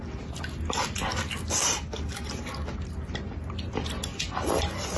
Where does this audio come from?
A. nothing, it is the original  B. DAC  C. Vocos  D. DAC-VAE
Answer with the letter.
A